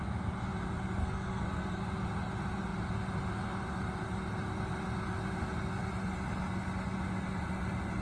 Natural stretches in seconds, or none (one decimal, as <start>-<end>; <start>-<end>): 0.0-1.0; 1.8-8.0